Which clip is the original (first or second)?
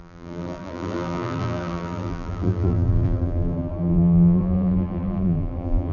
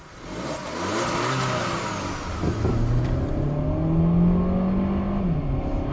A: second